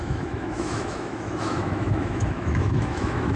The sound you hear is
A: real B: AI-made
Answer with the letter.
B